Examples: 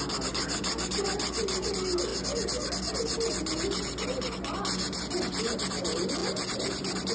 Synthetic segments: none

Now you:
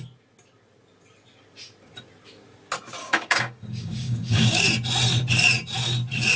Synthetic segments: 3.0-4.6 (codec, DAC)

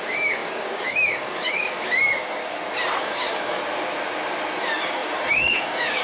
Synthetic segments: 0.0-2.4 (codec, DAC); 3.0-3.6; 4.6-6.0

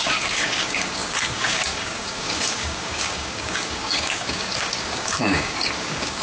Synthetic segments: 0.0-6.2 (codec, DAC)

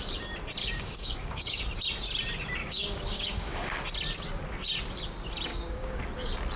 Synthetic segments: 0.6-1.6 (codec, DAC); 2.6-3.7; 5.5-6.0

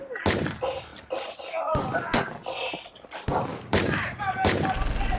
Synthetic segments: 3.5-4.3 (codec, DAC)

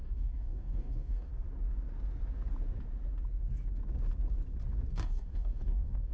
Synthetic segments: 0.0-1.3 (codec, DAC); 4.9-6.1